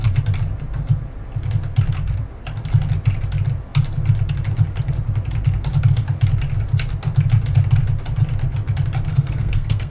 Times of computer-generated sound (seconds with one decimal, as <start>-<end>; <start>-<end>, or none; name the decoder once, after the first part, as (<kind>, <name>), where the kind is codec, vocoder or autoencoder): 9.1-9.9 (codec, SNAC)